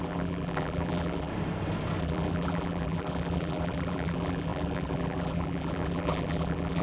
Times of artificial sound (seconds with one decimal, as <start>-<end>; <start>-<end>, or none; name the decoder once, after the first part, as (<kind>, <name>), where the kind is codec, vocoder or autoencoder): 0.0-1.3 (vocoder, BigVGAN v2); 2.0-6.8

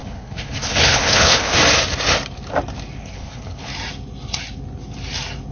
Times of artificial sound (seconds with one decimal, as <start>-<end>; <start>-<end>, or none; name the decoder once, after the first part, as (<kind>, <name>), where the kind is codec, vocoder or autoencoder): 0.0-1.6 (codec, HILCodec); 3.0-3.7

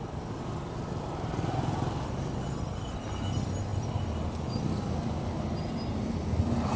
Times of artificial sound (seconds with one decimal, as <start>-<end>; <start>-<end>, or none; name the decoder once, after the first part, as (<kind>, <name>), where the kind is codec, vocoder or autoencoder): none

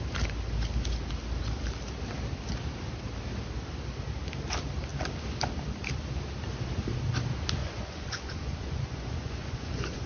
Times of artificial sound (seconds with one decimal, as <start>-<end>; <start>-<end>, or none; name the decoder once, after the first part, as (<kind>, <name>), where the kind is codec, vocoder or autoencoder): 7.6-10.1 (vocoder, Vocos)